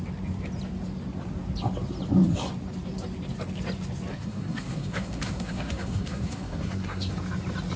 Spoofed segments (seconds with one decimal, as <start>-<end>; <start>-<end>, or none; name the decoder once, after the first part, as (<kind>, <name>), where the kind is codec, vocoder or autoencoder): 4.1-7.1 (codec, SNAC)